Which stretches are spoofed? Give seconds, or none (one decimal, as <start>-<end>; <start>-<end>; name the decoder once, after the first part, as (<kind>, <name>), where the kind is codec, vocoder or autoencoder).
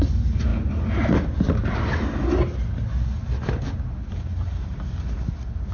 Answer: none